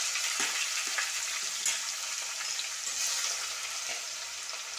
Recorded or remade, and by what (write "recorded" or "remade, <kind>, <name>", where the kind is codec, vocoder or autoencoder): recorded